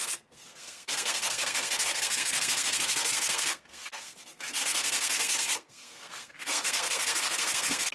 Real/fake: fake